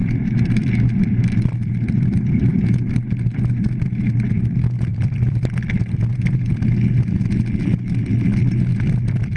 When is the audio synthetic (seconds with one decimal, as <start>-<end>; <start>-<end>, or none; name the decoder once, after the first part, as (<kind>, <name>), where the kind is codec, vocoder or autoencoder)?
0.0-1.2 (vocoder, BigVGAN v2); 4.9-6.1; 8.7-9.4